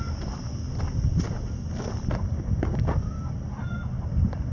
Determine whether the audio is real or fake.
real